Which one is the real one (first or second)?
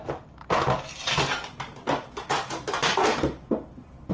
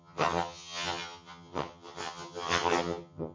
first